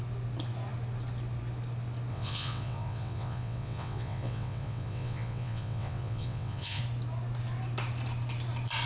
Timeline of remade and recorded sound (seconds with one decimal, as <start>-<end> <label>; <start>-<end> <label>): 0.0-2.1 recorded; 2.1-6.8 remade; 6.8-8.8 recorded